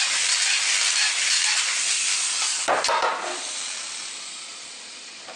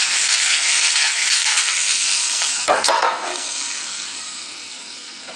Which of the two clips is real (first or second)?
first